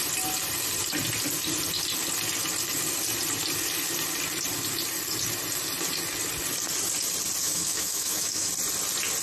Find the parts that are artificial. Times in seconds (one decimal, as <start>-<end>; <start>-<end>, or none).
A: 7.4-8.5

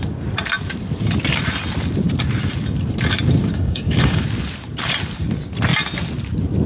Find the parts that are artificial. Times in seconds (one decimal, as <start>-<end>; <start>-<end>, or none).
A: 3.4-4.2

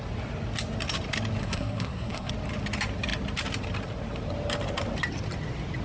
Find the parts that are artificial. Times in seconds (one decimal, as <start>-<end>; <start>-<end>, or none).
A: 1.4-2.3